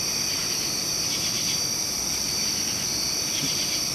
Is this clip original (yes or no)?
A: no